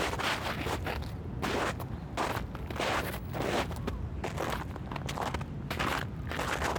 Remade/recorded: recorded